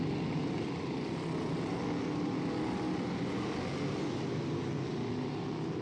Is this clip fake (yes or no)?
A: no